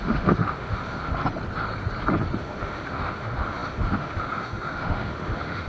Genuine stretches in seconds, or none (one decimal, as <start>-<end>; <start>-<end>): 1.1-2.4